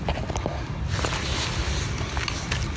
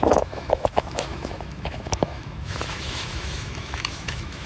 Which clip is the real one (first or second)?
first